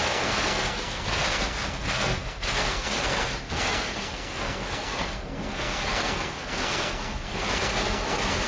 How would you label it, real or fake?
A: fake